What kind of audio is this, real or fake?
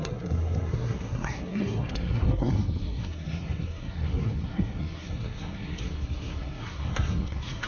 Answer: fake